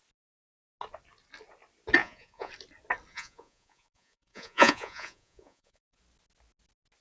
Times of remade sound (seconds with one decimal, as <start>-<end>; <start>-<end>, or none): 2.0-2.5; 3.1-6.0